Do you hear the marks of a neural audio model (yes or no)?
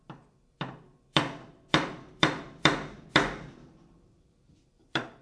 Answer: yes